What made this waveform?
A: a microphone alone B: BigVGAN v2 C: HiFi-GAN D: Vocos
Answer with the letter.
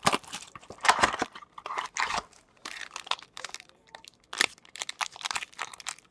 B